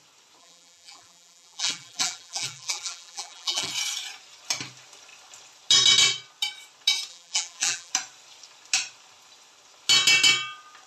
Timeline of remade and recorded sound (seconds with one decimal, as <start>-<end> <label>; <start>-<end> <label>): 0.0-0.4 recorded; 0.4-3.7 remade; 3.7-7.1 recorded; 7.1-7.9 remade; 7.9-10.9 recorded